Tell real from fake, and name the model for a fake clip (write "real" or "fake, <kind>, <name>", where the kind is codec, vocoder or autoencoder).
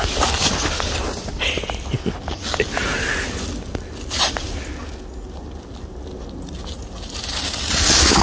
real